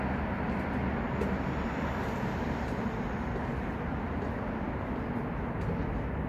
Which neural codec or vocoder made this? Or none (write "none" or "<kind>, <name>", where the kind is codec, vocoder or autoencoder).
none